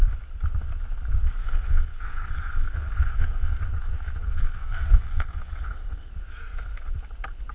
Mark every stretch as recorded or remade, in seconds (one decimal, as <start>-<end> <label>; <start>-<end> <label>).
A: 0.0-1.4 recorded; 1.4-3.6 remade; 3.6-4.2 recorded; 4.2-6.1 remade; 6.1-7.5 recorded